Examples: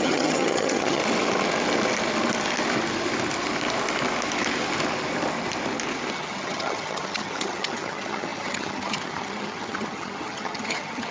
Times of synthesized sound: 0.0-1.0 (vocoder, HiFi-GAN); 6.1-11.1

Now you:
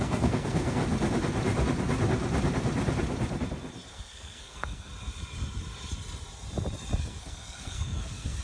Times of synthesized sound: 0.0-0.8 (codec, SNAC); 3.9-4.9; 7.0-8.4

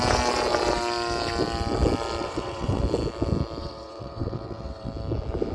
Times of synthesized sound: 2.2-2.8 (vocoder, WaveNeXt); 3.6-4.9

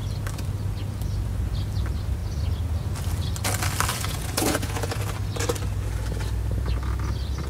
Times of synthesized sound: 3.9-5.0 (vocoder, Vocos)

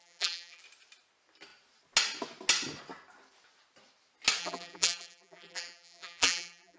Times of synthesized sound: 0.0-0.6 (vocoder, BigVGAN v2); 4.4-6.8